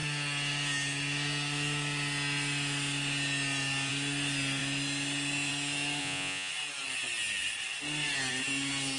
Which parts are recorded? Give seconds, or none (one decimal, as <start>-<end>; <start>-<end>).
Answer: 0.0-6.0; 6.5-9.0